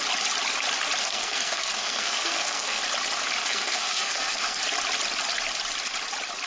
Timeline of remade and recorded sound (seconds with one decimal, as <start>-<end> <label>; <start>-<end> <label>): 0.0-1.0 recorded; 1.0-2.8 remade; 2.8-3.4 recorded; 3.4-4.6 remade; 4.6-6.5 recorded